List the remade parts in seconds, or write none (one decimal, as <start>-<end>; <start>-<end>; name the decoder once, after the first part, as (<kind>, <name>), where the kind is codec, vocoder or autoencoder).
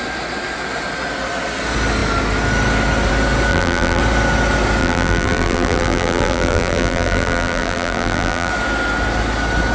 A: 3.5-4.0 (vocoder, BigVGAN v2); 4.8-8.5